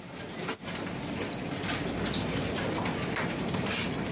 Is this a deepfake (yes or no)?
no